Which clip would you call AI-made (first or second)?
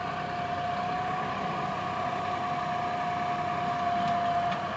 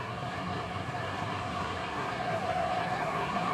second